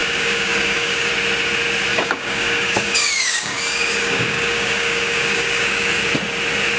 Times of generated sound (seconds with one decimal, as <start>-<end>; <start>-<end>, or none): 0.0-1.1; 1.9-6.0